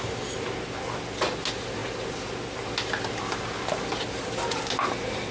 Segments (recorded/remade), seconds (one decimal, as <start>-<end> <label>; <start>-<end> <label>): 0.0-5.3 recorded